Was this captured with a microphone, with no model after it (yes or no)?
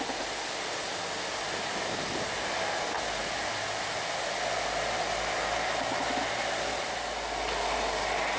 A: yes